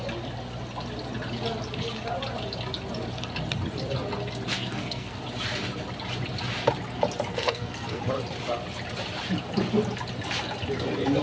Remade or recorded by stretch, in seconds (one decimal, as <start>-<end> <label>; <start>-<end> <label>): 0.0-4.5 recorded; 4.5-5.2 remade; 5.2-7.3 recorded; 7.3-8.0 remade; 8.0-11.2 recorded